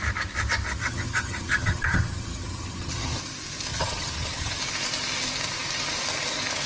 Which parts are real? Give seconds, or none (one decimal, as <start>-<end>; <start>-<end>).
0.0-0.8; 3.2-3.7; 4.6-6.7